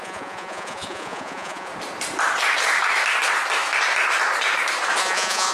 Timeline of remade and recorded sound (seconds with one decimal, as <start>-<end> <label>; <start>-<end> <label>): 0.0-1.7 remade; 1.7-5.0 recorded; 5.0-5.5 remade